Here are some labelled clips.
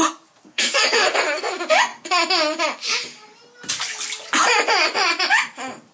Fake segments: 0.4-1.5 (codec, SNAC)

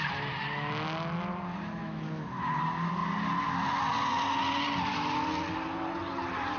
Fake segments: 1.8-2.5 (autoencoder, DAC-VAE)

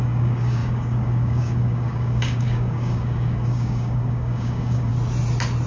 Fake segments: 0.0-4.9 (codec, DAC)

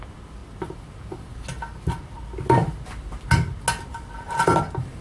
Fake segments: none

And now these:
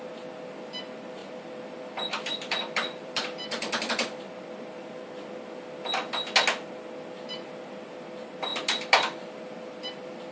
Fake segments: 1.2-4.4 (vocoder, BigVGAN v2); 8.5-10.3

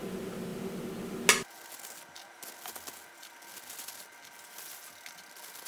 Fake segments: none